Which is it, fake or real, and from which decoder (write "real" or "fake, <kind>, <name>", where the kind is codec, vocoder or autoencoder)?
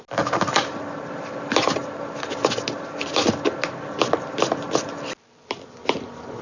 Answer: real